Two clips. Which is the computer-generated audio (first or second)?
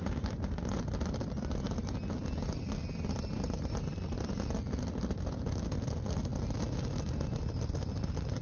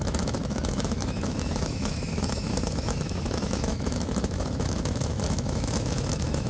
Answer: second